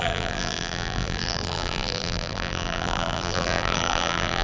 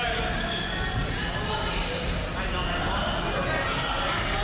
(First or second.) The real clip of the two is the second